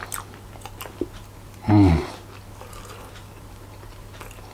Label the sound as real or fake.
real